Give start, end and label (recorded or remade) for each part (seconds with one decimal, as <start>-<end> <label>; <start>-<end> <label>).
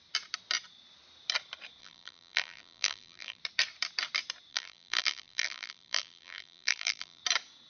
0.0-1.8 recorded; 1.8-3.4 remade; 3.4-4.5 recorded; 4.5-7.2 remade; 7.2-7.7 recorded